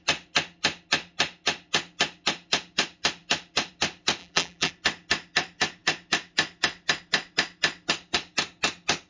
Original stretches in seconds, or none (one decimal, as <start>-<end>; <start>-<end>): 0.0-4.2; 4.7-9.1